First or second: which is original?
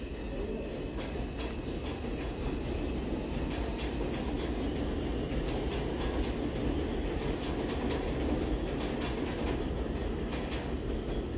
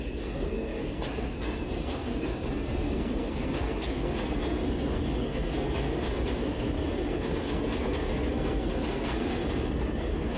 first